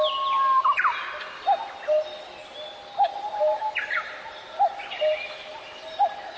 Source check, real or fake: real